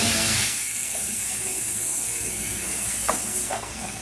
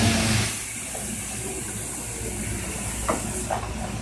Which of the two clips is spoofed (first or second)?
first